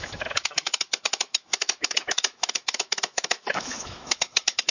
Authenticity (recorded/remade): remade